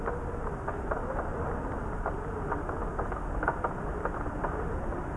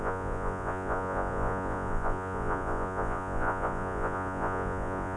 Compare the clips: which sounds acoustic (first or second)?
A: first